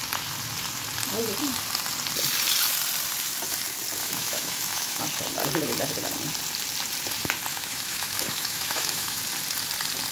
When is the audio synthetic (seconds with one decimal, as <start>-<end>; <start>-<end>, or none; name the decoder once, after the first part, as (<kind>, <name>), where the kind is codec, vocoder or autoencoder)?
4.0-5.0 (autoencoder, DAC-VAE); 7.5-9.2